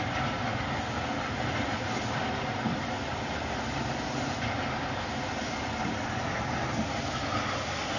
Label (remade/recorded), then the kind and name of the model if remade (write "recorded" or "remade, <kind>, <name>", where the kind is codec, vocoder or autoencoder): recorded